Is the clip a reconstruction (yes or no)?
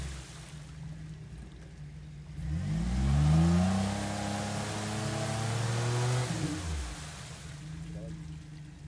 no